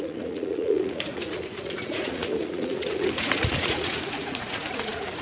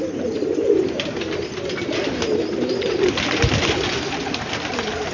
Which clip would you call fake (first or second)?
first